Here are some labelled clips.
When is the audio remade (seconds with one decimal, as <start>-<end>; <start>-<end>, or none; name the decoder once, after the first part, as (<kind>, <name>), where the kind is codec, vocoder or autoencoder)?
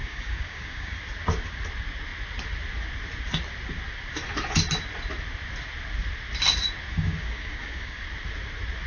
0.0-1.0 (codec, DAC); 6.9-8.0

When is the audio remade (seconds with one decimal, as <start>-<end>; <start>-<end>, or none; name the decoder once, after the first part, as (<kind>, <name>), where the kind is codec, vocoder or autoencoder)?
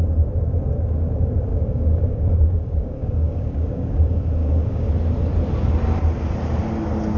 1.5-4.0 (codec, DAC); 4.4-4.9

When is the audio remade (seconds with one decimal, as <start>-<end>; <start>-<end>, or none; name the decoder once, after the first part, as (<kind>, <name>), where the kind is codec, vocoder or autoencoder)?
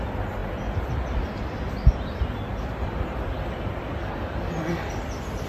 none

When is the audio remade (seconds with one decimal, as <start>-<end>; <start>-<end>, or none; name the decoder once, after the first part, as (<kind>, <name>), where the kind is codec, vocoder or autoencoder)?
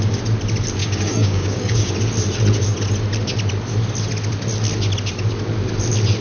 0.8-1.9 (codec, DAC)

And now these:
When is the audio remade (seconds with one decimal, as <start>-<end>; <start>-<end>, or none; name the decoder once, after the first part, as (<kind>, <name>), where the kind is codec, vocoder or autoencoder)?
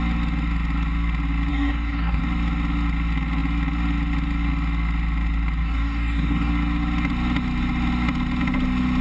1.5-2.2 (codec, DAC); 5.6-6.5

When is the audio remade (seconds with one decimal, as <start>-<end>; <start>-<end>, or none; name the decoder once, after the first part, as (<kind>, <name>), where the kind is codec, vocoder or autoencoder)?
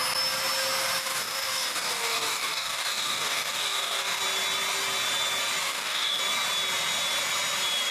1.0-4.2 (codec, DAC); 5.6-6.2